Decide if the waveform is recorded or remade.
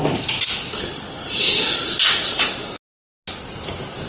recorded